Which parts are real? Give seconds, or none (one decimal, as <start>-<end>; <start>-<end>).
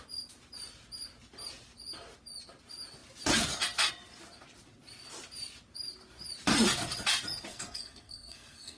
0.0-7.5